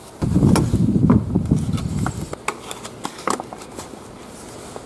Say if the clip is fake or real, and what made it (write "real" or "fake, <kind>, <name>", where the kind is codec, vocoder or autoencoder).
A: real